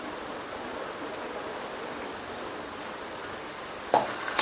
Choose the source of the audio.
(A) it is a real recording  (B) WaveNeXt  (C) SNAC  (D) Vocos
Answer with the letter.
A